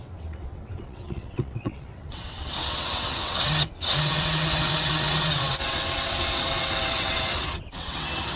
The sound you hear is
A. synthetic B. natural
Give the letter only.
A